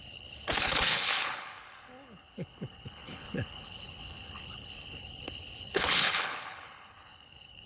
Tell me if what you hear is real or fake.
fake